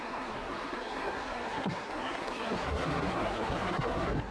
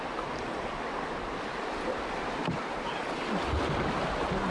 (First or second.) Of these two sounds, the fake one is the first